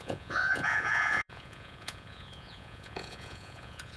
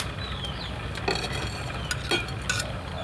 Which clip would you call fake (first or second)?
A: first